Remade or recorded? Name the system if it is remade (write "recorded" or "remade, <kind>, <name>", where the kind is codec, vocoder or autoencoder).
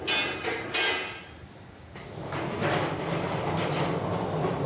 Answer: recorded